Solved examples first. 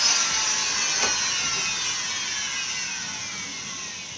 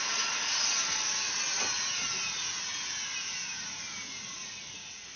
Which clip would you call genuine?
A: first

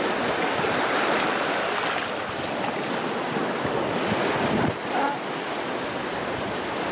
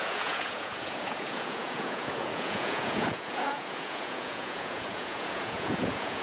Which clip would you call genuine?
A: first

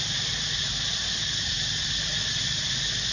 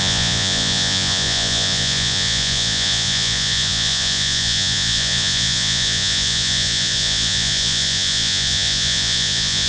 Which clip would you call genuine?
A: first